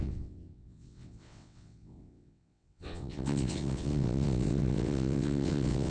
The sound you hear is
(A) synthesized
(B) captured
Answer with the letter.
A